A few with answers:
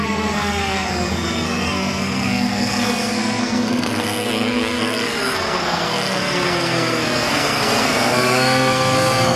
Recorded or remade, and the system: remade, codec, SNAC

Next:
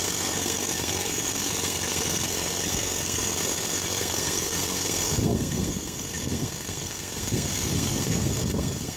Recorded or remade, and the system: remade, codec, SNAC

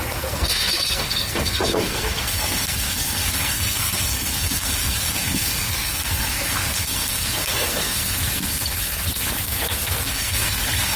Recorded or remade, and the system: remade, codec, SNAC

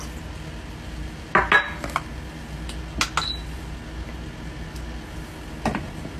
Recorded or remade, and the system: recorded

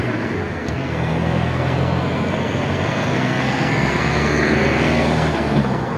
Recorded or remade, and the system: remade, codec, SNAC